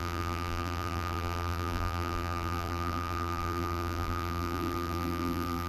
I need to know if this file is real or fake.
fake